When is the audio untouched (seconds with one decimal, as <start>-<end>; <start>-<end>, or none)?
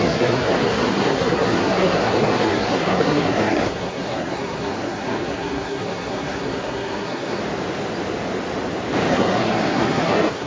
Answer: 7.4-9.1